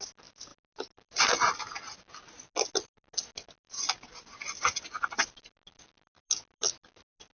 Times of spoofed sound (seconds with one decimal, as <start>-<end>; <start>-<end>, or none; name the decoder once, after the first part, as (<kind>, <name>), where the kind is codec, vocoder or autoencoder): none